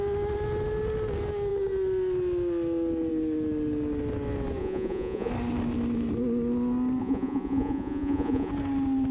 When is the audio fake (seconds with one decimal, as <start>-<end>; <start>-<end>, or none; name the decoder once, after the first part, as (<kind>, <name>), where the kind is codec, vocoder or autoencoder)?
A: 4.6-5.3 (vocoder, Vocos); 7.0-8.5

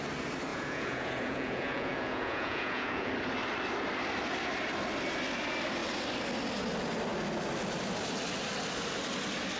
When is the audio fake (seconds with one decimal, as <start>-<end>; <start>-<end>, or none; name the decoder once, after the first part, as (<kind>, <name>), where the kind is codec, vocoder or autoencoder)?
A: 0.5-3.1 (vocoder, Vocos)

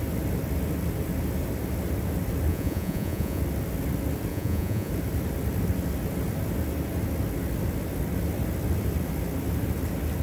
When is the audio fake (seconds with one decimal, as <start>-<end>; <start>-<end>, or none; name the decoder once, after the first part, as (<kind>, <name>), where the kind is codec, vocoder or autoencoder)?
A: 2.5-3.4 (vocoder, Vocos); 4.3-4.9

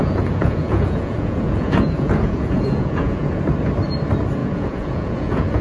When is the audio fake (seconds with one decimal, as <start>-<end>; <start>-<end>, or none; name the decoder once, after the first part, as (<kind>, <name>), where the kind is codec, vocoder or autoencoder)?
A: 0.0-3.4 (vocoder, Vocos); 4.4-5.6

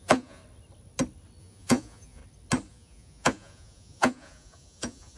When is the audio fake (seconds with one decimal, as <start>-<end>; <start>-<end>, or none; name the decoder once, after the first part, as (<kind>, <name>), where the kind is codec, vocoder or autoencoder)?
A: 0.0-0.4 (vocoder, Vocos); 1.4-2.2; 2.7-5.2